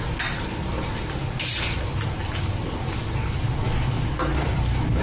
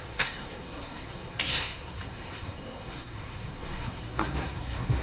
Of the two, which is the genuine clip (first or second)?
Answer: first